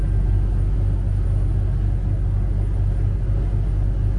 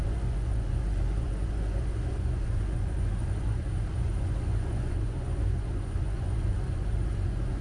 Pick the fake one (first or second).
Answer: second